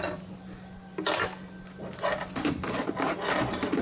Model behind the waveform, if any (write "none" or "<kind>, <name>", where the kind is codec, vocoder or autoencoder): none